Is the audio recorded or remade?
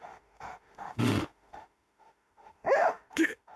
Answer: remade